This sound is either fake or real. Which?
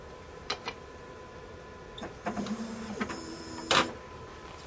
real